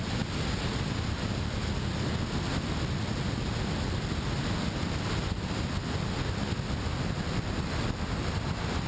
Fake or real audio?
real